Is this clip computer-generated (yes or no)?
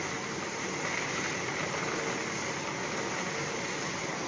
no